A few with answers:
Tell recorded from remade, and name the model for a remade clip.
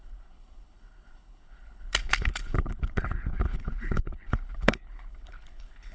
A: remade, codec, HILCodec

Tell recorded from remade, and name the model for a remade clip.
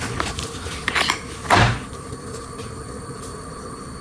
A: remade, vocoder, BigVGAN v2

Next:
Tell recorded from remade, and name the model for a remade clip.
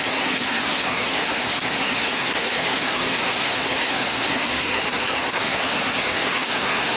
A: remade, codec, SNAC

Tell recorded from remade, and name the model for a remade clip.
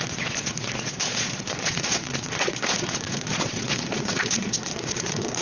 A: remade, vocoder, Vocos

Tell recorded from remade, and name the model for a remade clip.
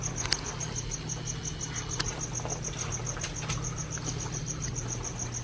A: recorded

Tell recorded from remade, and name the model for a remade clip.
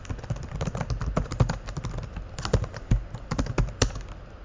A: recorded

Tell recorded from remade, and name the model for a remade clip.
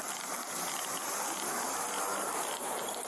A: recorded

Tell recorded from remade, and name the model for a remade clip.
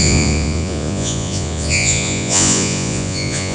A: remade, vocoder, Vocos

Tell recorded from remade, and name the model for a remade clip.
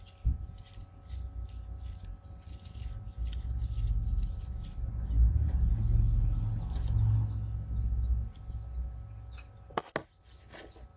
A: recorded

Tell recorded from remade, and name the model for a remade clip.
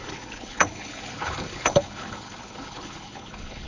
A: remade, codec, HILCodec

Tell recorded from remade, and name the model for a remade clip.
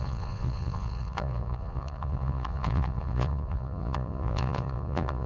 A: remade, vocoder, Vocos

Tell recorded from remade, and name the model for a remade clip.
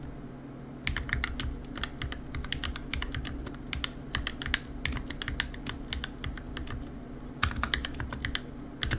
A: recorded